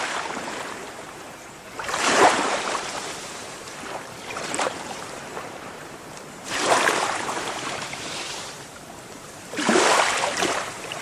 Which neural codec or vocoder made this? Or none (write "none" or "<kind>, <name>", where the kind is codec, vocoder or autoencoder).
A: vocoder, BigVGAN v2